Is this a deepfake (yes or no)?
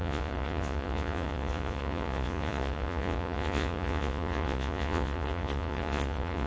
yes